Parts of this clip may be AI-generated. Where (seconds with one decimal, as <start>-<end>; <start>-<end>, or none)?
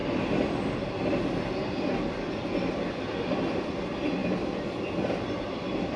none